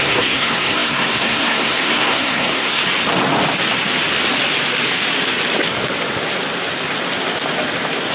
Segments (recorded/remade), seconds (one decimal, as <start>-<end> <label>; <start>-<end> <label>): 0.0-2.8 remade; 2.8-8.1 recorded